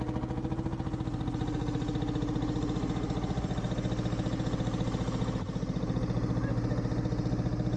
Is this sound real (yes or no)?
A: yes